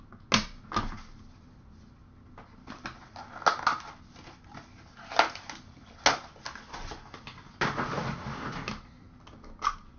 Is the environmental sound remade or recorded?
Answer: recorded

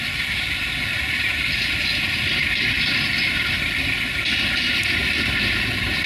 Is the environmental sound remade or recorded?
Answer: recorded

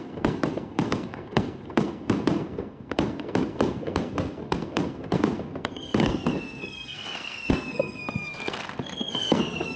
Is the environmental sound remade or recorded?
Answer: remade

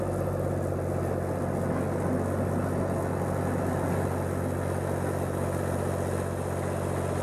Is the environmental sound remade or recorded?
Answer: recorded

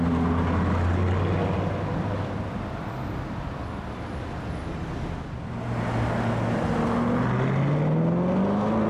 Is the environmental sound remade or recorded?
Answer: recorded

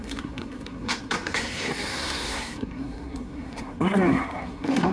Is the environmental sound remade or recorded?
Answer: remade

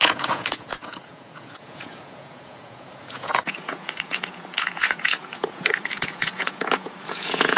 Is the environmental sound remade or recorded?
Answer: remade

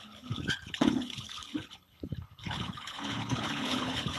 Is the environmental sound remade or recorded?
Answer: remade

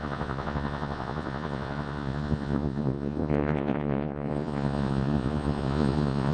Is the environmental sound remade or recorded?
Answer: remade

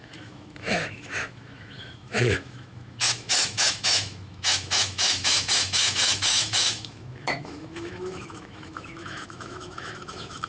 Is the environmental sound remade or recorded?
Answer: remade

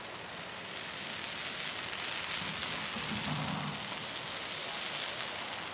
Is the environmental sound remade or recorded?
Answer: recorded